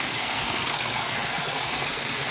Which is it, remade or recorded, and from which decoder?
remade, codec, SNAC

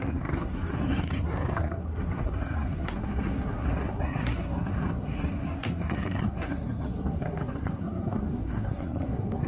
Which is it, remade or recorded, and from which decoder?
remade, codec, SNAC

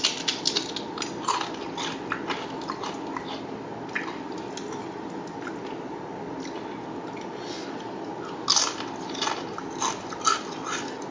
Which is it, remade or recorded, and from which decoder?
recorded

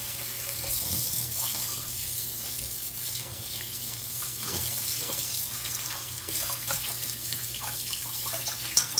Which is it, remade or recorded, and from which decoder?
remade, codec, SNAC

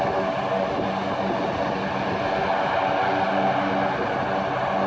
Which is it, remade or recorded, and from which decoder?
recorded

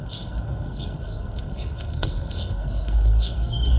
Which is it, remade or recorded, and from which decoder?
remade, codec, SNAC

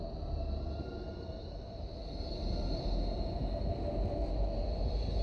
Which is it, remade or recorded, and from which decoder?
recorded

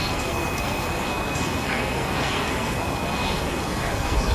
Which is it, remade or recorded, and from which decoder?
remade, codec, SNAC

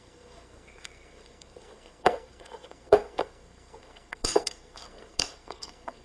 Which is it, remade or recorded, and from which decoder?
remade, codec, SNAC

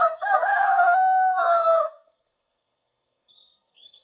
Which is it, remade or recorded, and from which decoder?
remade, codec, SNAC